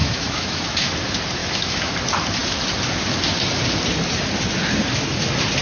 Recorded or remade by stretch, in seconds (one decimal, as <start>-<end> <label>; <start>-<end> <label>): 0.0-0.9 remade; 0.9-1.4 recorded; 1.4-1.9 remade; 1.9-5.6 recorded